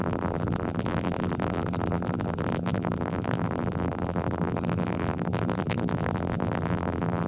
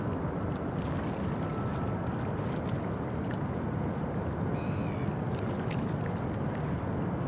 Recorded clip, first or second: second